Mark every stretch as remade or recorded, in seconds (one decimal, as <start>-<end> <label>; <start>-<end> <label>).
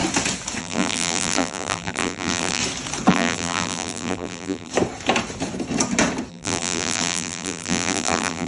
0.0-0.6 recorded; 0.6-2.6 remade; 2.6-3.1 recorded; 3.1-4.7 remade; 4.7-6.3 recorded; 6.3-8.5 remade